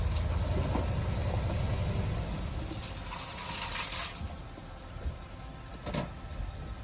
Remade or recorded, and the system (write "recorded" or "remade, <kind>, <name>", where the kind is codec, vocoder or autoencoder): recorded